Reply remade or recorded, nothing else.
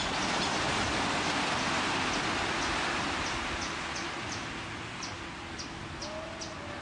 recorded